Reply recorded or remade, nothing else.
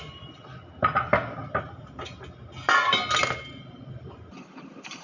recorded